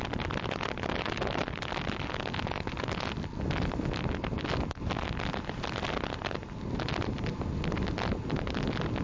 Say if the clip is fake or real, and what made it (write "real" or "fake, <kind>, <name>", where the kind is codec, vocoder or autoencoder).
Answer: real